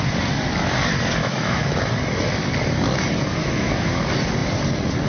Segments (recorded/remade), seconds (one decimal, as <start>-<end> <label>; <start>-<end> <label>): 0.0-1.2 recorded; 1.2-1.8 remade; 1.8-3.4 recorded; 3.4-4.0 remade; 4.0-5.1 recorded